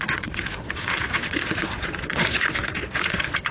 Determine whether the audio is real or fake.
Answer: fake